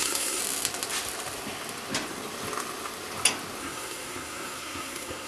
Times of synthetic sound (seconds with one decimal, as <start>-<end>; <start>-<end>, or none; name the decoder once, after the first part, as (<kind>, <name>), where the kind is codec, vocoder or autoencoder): 0.0-0.4 (codec, SNAC); 3.6-5.3